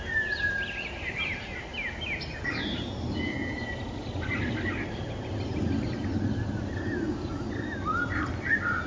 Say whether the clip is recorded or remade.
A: recorded